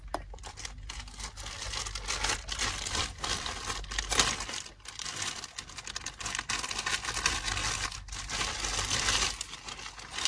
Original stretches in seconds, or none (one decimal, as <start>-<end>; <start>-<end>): 0.0-10.3